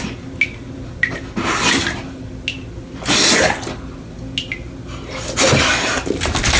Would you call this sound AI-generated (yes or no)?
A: no